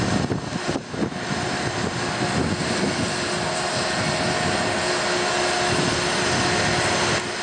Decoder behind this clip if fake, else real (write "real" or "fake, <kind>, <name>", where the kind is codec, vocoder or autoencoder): real